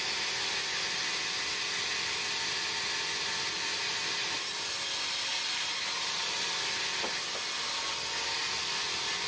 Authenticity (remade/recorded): recorded